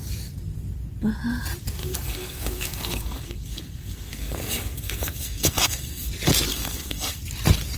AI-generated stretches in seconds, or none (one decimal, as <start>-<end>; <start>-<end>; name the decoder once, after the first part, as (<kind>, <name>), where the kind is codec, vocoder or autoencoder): 1.8-6.1 (codec, SNAC); 6.5-7.2